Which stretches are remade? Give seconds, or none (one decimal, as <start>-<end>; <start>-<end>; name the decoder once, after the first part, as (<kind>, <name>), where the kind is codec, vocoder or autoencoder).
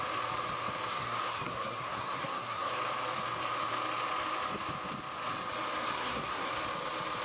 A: 0.9-2.7 (codec, SNAC); 5.9-6.5